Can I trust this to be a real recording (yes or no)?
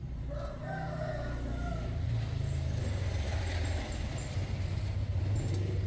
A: yes